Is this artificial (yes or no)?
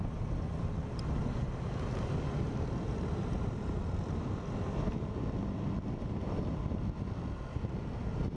no